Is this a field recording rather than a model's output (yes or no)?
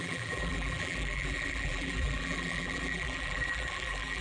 no